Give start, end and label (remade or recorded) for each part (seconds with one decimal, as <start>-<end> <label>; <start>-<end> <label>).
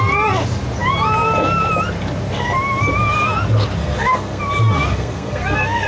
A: 0.0-3.8 recorded; 3.8-4.4 remade; 4.4-4.9 recorded; 4.9-5.9 remade